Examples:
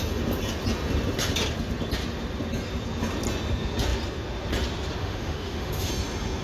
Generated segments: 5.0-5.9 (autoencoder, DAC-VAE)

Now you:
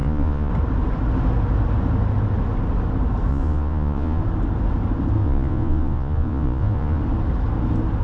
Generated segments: 0.0-0.5 (vocoder, Vocos); 3.3-4.2; 5.2-7.0

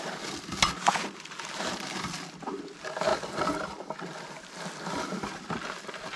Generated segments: 3.1-3.9 (vocoder, BigVGAN v2)

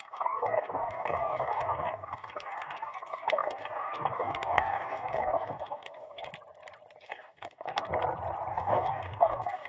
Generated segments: 0.0-6.3 (codec, DAC); 7.0-7.9; 8.5-9.7